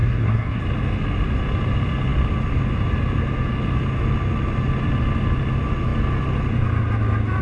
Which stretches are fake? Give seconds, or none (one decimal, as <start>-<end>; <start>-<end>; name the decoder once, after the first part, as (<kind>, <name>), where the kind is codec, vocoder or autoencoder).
0.0-0.6 (codec, SNAC)

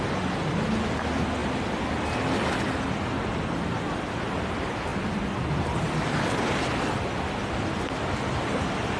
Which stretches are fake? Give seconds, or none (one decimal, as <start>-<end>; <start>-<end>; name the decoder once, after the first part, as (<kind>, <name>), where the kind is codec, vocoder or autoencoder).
none

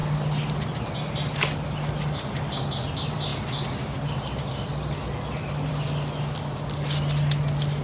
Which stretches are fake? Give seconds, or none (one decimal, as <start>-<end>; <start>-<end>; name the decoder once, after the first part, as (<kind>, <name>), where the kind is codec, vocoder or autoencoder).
none

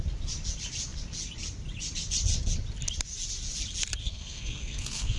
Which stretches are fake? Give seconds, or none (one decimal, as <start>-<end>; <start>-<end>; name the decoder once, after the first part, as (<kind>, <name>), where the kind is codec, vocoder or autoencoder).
4.0-5.2 (codec, SNAC)